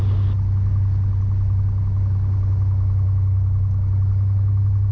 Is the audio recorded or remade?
recorded